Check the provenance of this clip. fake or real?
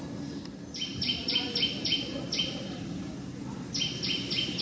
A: real